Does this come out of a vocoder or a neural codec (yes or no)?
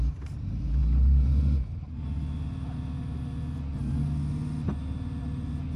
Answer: no